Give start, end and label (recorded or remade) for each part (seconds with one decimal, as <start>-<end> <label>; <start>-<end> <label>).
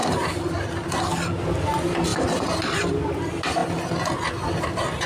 0.0-1.0 remade; 1.0-2.1 recorded; 2.1-2.8 remade; 2.8-5.1 recorded